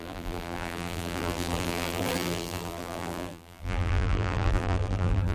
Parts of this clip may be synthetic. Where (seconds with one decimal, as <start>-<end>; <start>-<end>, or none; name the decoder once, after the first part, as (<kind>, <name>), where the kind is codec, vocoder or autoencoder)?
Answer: 0.0-5.3 (vocoder, BigVGAN v2)

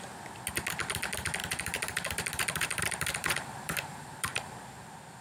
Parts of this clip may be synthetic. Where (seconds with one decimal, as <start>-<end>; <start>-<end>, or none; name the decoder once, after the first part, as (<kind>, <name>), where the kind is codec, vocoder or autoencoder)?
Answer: 1.4-4.5 (vocoder, BigVGAN v2)

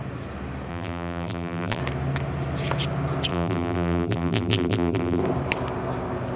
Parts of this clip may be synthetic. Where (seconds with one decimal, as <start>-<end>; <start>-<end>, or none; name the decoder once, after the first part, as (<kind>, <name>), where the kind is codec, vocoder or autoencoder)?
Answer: 0.7-1.8 (vocoder, BigVGAN v2); 3.3-5.2

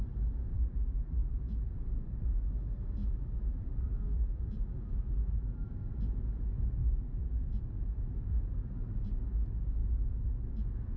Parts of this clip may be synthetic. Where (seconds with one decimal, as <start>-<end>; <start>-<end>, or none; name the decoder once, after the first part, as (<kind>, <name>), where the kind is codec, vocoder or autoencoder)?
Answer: 0.5-1.7 (vocoder, BigVGAN v2); 3.0-5.7; 6.8-7.5